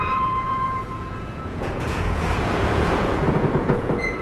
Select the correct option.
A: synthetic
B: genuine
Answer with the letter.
A